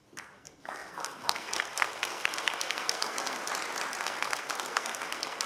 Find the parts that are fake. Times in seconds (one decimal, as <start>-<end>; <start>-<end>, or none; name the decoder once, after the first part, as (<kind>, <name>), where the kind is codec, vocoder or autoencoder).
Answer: 0.0-3.4 (codec, SNAC); 4.0-5.5